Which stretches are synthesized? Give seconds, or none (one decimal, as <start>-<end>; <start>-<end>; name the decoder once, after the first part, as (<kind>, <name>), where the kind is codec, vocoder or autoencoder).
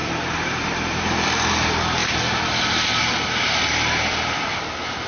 0.0-1.5 (vocoder, BigVGAN v2); 2.0-3.5